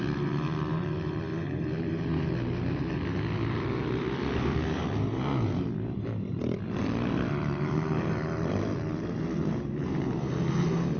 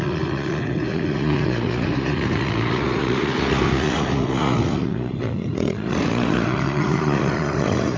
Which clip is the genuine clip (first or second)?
first